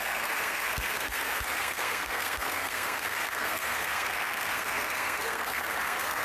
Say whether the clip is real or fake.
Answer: fake